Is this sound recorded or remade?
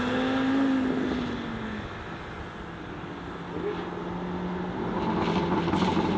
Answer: recorded